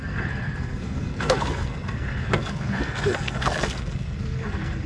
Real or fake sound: fake